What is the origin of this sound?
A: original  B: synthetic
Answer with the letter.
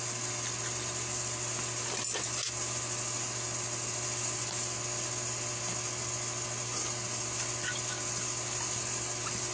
A